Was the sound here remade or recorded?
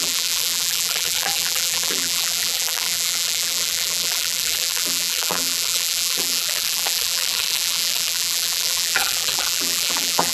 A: remade